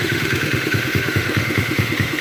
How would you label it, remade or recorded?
remade